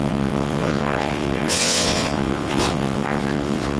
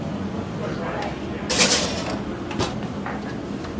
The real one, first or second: second